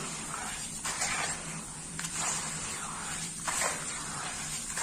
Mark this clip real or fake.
fake